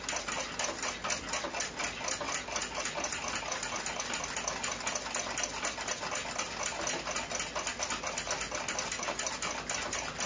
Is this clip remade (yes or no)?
no